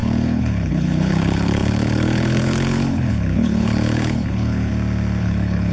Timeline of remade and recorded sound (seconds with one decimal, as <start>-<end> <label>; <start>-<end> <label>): 0.0-4.7 remade; 4.7-5.2 recorded; 5.2-5.7 remade